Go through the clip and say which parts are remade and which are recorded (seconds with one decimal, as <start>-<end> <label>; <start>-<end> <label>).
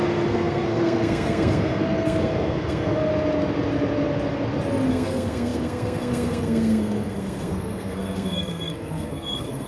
0.0-3.1 remade; 3.1-4.9 recorded; 4.9-9.7 remade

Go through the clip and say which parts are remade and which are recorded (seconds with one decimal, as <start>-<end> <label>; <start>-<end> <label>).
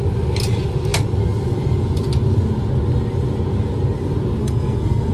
0.0-4.4 recorded; 4.4-5.1 remade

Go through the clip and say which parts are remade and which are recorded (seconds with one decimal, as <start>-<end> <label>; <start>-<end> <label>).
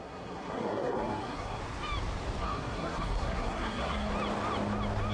0.0-1.6 remade; 1.6-2.4 recorded; 2.4-4.1 remade; 4.1-5.1 recorded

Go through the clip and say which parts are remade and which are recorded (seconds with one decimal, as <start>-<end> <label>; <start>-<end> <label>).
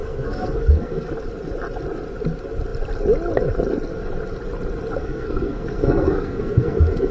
0.0-1.1 remade; 1.1-5.0 recorded; 5.0-7.1 remade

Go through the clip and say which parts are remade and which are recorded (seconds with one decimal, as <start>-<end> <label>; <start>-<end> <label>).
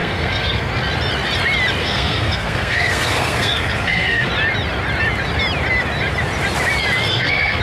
0.0-0.7 remade; 0.7-1.8 recorded; 1.8-4.3 remade; 4.3-7.1 recorded; 7.1-7.6 remade